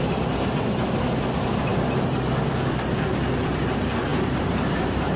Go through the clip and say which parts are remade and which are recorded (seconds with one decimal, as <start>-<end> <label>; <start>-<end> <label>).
0.0-4.1 recorded; 4.1-5.2 remade